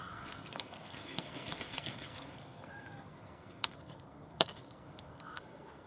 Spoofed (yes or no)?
yes